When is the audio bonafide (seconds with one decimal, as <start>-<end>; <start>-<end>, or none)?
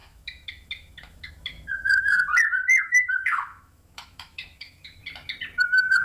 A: 2.3-2.8; 5.0-5.6